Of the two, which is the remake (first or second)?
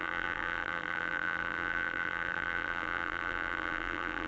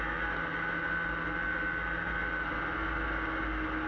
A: first